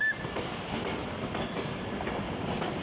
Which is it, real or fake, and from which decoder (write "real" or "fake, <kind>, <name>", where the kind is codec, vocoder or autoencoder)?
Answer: real